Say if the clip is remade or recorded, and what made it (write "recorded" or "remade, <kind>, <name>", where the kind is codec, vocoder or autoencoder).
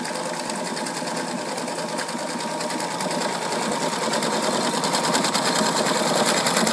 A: recorded